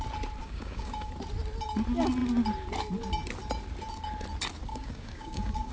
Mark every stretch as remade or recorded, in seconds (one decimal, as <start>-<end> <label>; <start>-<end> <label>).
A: 0.0-0.4 recorded; 0.4-1.1 remade; 1.1-4.7 recorded; 4.7-5.7 remade